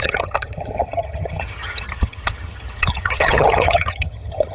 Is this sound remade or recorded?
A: remade